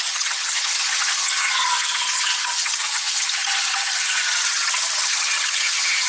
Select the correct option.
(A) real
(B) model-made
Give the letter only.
B